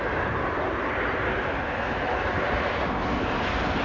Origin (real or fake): real